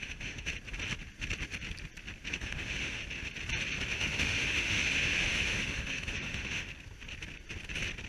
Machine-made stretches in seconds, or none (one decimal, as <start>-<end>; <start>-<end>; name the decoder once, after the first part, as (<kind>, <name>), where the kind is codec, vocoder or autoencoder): 0.0-0.5 (autoencoder, DAC-VAE); 2.3-3.0; 3.9-6.7